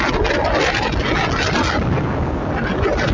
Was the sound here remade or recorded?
recorded